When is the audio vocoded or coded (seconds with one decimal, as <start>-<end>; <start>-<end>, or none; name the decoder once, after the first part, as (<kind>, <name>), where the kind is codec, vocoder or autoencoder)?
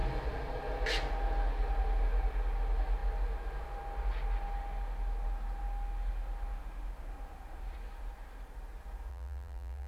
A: 9.1-9.9 (vocoder, BigVGAN v2)